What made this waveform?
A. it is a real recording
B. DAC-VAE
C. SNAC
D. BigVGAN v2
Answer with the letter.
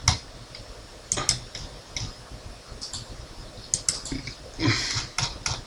A